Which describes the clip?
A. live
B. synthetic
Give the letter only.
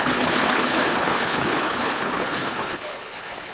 B